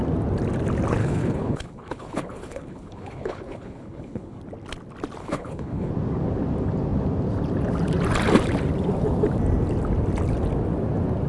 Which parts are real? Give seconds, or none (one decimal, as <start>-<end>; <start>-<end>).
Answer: 0.0-1.0; 4.4-5.2; 5.9-11.3